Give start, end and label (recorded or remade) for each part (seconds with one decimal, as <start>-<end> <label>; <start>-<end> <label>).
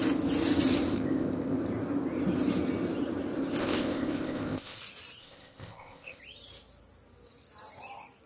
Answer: 0.0-0.9 recorded; 0.9-1.6 remade; 1.6-3.6 recorded; 3.6-4.8 remade; 4.8-5.2 recorded; 5.2-6.2 remade; 6.2-8.3 recorded